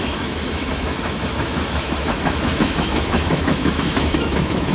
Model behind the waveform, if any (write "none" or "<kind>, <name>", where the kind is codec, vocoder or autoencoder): autoencoder, DAC-VAE